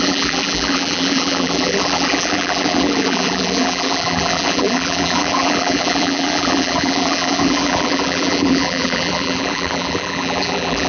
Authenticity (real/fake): fake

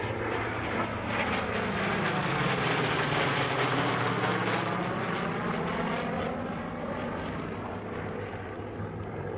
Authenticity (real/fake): real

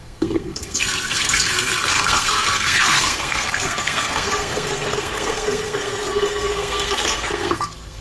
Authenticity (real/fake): fake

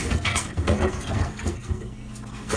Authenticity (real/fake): fake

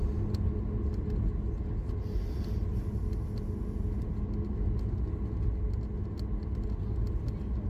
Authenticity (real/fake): real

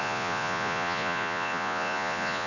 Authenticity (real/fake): fake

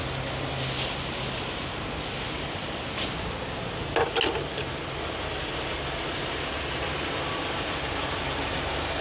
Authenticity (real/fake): real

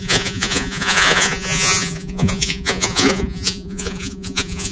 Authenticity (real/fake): fake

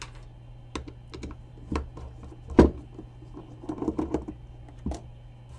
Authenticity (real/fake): real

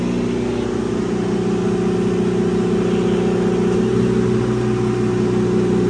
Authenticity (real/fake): real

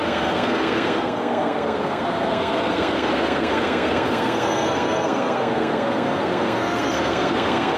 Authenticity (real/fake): fake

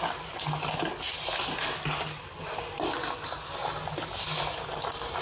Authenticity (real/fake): real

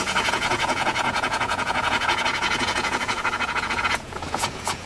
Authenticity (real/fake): fake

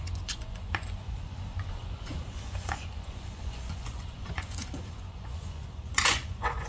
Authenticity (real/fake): fake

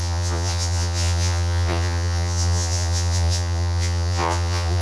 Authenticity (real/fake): fake